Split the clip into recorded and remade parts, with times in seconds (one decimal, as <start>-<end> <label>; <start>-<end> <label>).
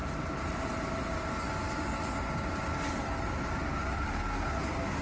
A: 0.0-5.0 recorded